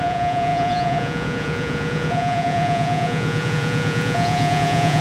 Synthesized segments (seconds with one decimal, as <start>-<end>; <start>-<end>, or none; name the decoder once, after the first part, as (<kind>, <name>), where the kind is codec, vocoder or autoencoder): 0.0-5.0 (vocoder, Vocos)